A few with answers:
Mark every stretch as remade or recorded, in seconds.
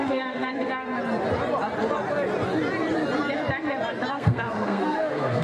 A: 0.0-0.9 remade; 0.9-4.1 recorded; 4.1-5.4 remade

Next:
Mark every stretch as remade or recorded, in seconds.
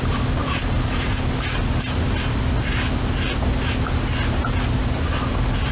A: 0.0-5.7 recorded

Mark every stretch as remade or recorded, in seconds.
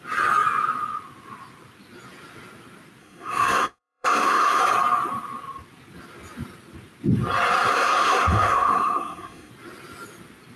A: 0.0-3.0 recorded; 3.0-4.6 remade; 4.6-7.7 recorded; 7.7-9.5 remade; 9.5-10.6 recorded